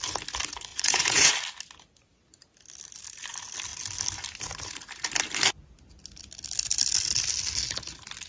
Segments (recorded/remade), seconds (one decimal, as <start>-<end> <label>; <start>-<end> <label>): 0.0-0.7 recorded; 0.7-1.3 remade; 1.3-8.3 recorded